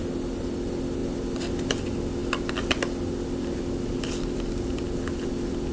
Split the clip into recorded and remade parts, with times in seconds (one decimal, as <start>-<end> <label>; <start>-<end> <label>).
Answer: 0.0-5.7 recorded